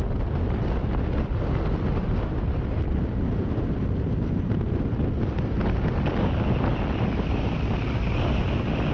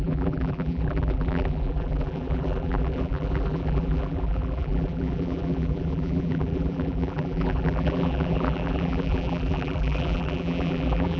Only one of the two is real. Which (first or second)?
first